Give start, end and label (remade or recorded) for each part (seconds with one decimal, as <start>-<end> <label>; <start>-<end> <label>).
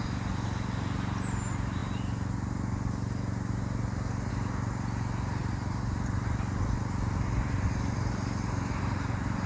0.0-9.5 recorded